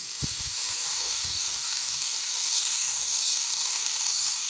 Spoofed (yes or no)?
yes